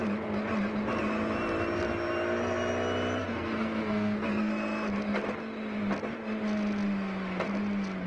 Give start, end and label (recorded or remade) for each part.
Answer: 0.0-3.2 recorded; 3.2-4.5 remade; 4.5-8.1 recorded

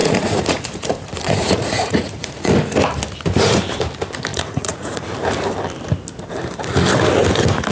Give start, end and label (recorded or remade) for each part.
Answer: 0.0-2.5 remade; 2.5-4.3 recorded; 4.3-5.1 remade; 5.1-7.7 recorded